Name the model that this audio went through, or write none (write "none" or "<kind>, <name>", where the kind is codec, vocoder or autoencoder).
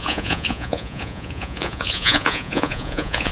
vocoder, Vocos